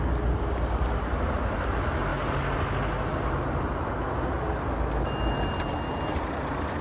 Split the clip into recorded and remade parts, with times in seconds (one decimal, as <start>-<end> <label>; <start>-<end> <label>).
0.0-6.8 recorded